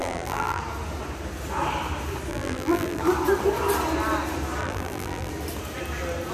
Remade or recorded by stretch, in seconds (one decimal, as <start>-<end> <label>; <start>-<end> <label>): 0.0-0.6 remade; 0.6-2.3 recorded; 2.3-3.0 remade; 3.0-4.6 recorded; 4.6-5.3 remade; 5.3-6.3 recorded